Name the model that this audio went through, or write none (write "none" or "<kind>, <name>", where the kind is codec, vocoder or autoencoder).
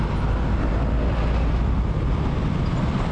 none